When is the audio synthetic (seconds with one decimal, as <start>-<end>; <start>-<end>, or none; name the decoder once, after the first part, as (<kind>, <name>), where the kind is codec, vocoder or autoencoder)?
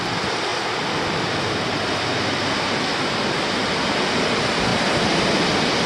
4.7-5.3 (vocoder, BigVGAN v2)